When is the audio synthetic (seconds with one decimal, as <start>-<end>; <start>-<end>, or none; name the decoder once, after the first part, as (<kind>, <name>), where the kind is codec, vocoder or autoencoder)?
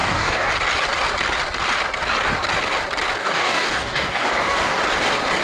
0.0-0.5 (codec, DAC); 3.2-4.8